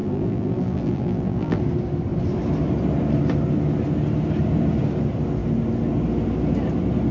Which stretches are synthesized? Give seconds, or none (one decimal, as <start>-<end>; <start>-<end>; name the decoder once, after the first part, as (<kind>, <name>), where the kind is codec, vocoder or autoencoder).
0.0-1.6 (vocoder, BigVGAN v2)